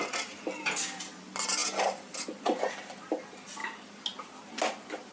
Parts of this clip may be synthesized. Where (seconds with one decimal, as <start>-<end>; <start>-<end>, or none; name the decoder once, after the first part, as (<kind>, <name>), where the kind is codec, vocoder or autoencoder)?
none